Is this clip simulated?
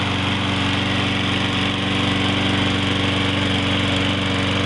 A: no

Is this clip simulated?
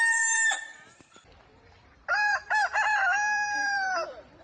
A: yes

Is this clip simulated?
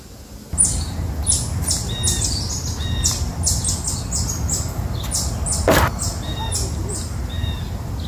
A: no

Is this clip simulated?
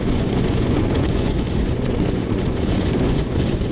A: yes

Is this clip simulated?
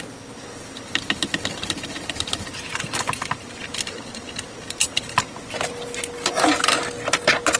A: no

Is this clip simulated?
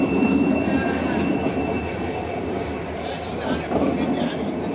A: no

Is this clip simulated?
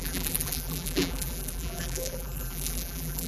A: yes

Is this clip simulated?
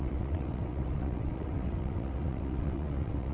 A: yes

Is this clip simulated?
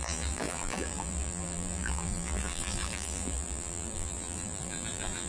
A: yes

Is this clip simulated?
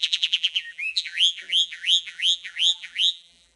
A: yes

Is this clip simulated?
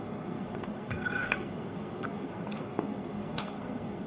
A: yes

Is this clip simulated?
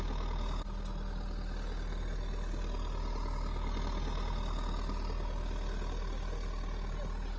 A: no